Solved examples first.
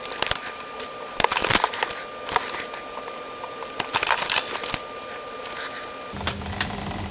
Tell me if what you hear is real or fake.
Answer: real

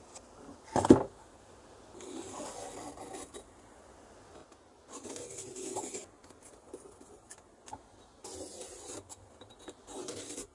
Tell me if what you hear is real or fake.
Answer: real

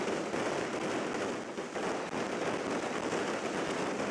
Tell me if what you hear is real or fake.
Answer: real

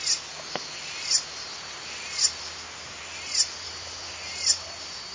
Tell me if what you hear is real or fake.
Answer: real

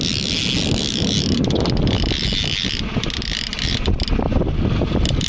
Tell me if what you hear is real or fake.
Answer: real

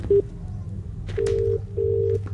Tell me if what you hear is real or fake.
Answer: real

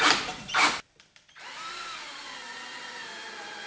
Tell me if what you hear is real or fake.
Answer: real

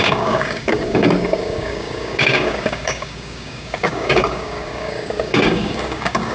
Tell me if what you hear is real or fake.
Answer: fake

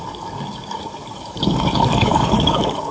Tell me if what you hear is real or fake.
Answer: fake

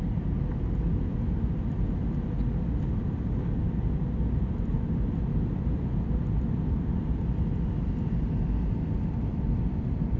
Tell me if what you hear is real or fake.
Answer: real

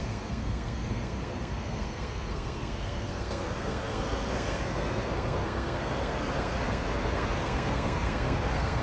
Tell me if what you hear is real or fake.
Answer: fake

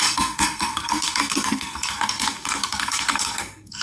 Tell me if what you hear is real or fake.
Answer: fake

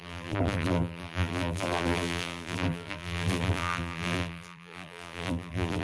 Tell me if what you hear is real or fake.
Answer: fake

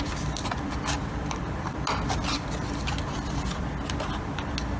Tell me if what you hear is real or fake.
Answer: real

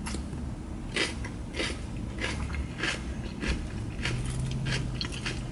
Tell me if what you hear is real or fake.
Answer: real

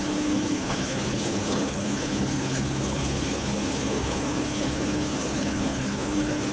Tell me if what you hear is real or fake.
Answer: fake